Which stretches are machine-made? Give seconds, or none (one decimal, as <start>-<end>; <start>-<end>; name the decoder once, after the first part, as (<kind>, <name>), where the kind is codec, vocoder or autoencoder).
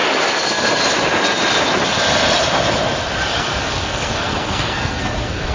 3.3-5.5 (codec, SNAC)